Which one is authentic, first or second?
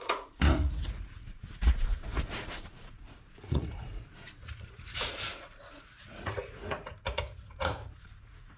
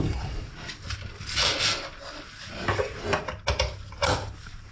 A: second